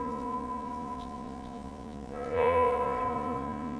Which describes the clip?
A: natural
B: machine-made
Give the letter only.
B